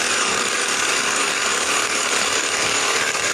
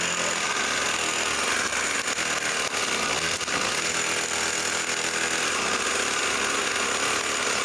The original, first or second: second